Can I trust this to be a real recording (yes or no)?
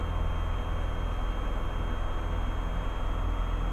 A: yes